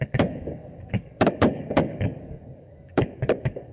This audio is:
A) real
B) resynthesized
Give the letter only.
B